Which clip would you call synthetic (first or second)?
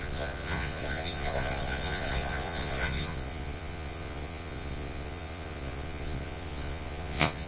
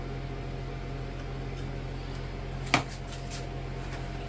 first